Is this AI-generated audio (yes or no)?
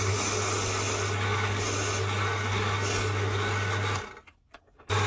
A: no